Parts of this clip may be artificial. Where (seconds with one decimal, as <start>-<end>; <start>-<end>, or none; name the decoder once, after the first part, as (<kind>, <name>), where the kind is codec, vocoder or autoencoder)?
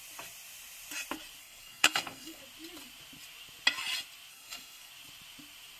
1.4-2.4 (codec, SNAC); 4.3-4.9